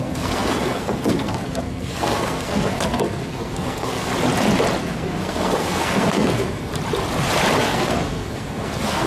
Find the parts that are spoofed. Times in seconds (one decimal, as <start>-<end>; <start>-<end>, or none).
0.0-4.1; 4.8-6.7; 7.6-9.1

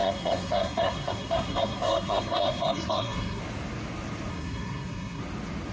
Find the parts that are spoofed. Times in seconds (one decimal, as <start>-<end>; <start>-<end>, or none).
0.0-3.4; 4.3-5.2

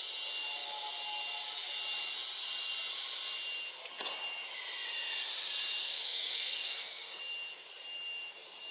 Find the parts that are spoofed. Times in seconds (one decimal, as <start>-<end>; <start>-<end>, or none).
5.8-7.2

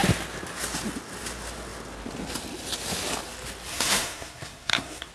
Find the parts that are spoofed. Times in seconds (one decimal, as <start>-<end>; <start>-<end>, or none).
3.7-5.1